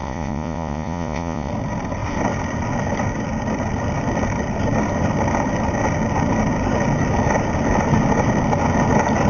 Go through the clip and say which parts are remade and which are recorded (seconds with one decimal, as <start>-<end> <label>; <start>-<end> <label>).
0.0-1.5 remade; 1.5-9.3 recorded